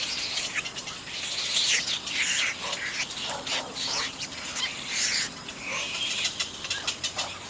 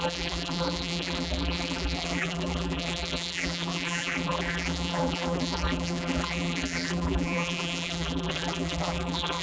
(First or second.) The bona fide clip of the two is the first